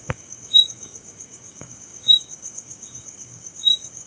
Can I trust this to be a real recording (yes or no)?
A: no